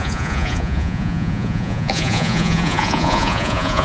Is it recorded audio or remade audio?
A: remade